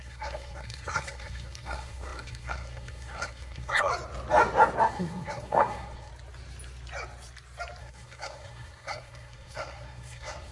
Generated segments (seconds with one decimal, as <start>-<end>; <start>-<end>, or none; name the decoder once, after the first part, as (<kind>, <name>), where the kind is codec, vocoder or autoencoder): 0.0-3.9 (codec, SNAC); 4.8-6.1; 7.8-10.5